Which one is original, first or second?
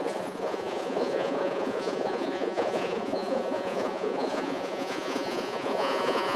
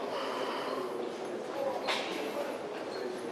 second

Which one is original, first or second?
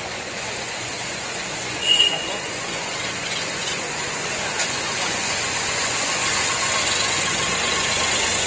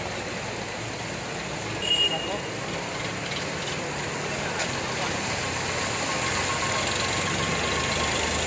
second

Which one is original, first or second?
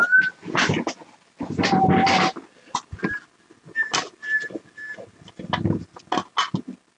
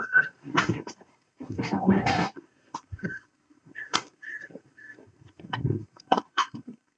first